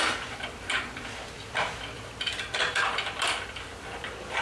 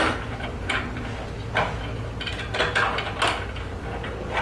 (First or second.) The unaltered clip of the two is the second